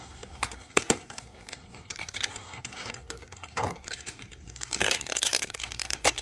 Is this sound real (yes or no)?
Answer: no